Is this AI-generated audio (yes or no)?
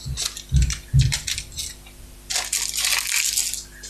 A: no